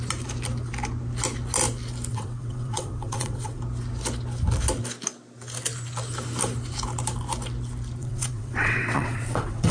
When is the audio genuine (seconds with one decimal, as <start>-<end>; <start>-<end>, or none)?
0.0-2.1; 3.6-8.0